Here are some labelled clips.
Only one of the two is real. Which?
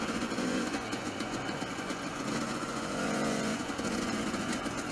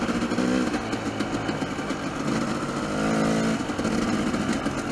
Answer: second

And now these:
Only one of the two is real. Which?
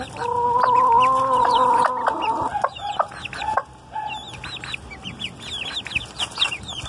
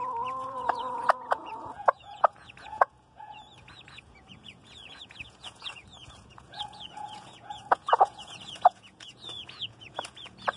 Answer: first